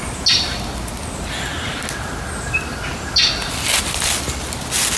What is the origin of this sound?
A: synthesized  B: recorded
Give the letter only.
B